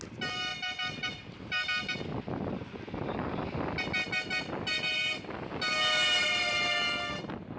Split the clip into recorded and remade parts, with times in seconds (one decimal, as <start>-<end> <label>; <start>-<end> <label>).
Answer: 0.0-7.6 recorded